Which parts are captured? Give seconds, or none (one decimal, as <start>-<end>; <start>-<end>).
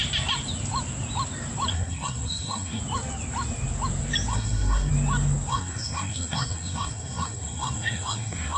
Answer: 0.0-1.7; 2.8-4.3; 4.9-5.5